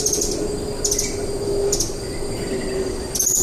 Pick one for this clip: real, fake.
real